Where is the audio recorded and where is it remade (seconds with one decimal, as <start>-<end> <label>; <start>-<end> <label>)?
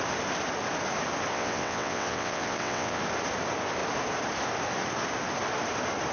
0.0-1.3 recorded; 1.3-3.0 remade; 3.0-6.1 recorded